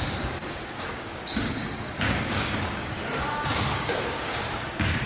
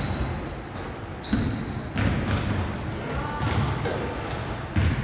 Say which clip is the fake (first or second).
first